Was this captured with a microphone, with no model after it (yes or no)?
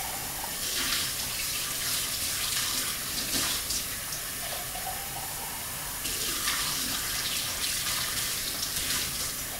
no